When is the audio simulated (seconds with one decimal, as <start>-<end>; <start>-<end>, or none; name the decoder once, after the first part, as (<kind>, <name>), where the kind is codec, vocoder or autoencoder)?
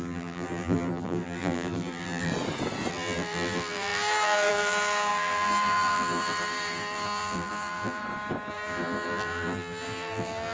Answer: 0.0-2.3 (vocoder, BigVGAN v2); 2.9-8.0; 8.5-10.5